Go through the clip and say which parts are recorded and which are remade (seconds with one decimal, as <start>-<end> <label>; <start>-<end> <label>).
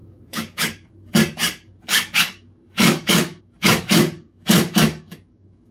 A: 0.0-5.7 remade